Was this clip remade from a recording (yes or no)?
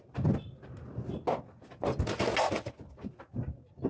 no